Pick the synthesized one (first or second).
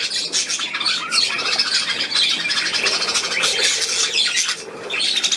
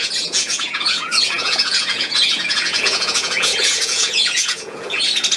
second